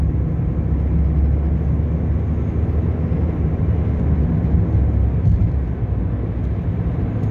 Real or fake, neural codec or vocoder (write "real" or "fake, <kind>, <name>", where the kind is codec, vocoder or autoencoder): real